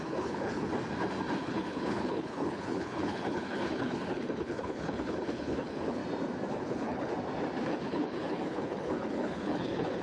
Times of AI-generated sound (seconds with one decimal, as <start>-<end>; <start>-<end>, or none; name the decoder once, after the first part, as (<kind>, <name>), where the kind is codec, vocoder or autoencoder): 0.0-0.7 (codec, HILCodec); 1.4-6.0; 6.5-7.1; 7.6-10.0